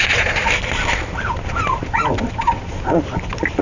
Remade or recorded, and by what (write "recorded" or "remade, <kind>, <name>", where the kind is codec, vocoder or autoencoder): recorded